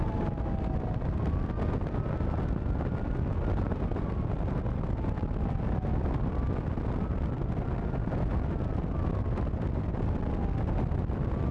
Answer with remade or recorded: recorded